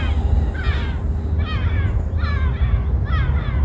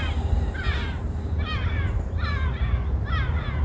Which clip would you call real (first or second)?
first